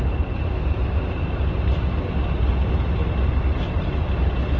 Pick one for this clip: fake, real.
real